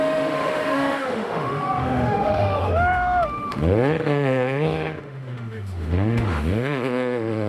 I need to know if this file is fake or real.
fake